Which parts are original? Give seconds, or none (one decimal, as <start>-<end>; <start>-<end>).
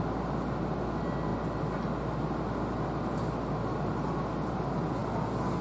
0.0-5.6